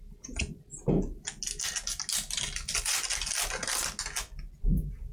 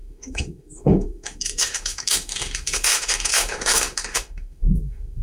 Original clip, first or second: first